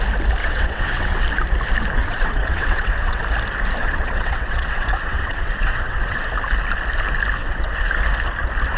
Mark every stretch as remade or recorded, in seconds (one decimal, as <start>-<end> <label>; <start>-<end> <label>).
0.0-0.4 recorded; 0.4-1.2 remade; 1.2-2.0 recorded; 2.0-3.2 remade; 3.2-3.8 recorded; 3.8-6.3 remade; 6.3-7.4 recorded; 7.4-7.9 remade; 7.9-8.8 recorded